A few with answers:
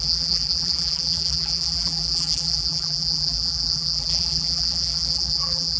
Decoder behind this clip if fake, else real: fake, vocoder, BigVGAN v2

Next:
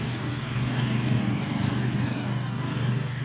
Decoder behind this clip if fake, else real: fake, codec, DAC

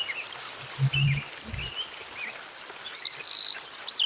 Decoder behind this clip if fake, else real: real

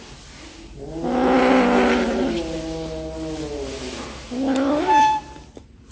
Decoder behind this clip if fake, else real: real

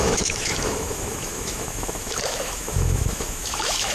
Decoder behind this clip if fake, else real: fake, autoencoder, DAC-VAE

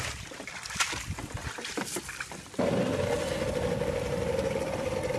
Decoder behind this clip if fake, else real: real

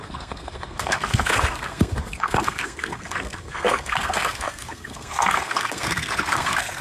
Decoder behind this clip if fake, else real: fake, codec, SNAC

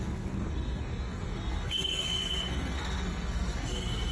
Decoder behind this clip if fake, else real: fake, codec, SNAC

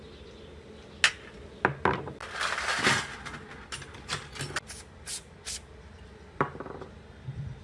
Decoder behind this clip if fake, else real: real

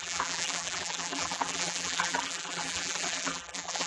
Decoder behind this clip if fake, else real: fake, vocoder, BigVGAN v2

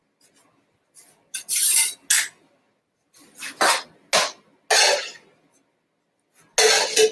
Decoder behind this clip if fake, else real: real